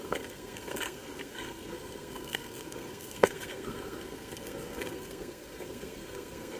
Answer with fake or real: fake